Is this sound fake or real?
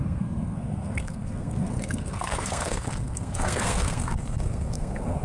fake